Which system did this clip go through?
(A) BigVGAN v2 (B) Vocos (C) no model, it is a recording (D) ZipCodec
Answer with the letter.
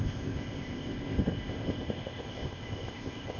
D